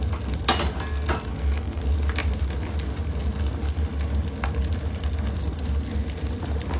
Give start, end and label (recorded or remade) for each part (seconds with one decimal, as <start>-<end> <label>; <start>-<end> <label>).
0.0-1.3 recorded; 1.3-1.8 remade; 1.8-6.8 recorded